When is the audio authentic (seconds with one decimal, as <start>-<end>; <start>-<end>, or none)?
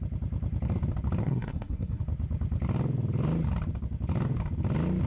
0.0-1.2; 2.0-5.1